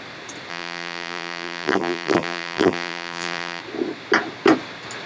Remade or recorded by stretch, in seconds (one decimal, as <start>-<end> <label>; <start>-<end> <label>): 0.0-0.5 recorded; 0.5-3.6 remade; 3.6-5.1 recorded